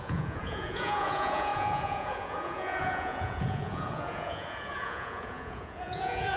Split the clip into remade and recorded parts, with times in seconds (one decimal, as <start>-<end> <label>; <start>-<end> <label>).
0.0-6.4 remade